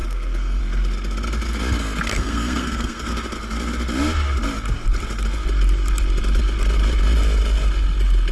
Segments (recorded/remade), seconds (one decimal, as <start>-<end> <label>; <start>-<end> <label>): 0.0-0.6 remade; 0.6-2.1 recorded; 2.1-3.1 remade; 3.1-8.3 recorded

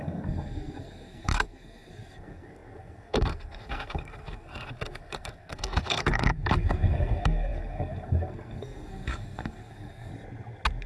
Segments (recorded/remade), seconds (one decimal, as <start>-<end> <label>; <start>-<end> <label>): 0.0-10.1 remade; 10.1-10.9 recorded

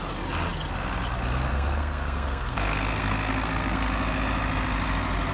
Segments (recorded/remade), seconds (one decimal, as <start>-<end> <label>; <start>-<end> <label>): 0.0-1.5 recorded; 1.5-3.9 remade; 3.9-5.3 recorded

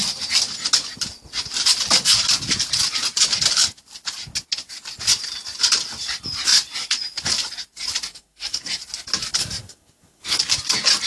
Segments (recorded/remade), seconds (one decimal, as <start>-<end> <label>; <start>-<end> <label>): 0.0-8.1 recorded; 8.1-8.7 remade; 8.7-9.4 recorded; 9.4-10.4 remade; 10.4-11.1 recorded